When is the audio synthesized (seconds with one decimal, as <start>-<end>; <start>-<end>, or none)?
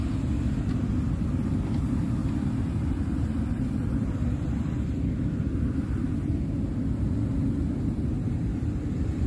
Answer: none